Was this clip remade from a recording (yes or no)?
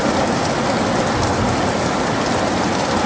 no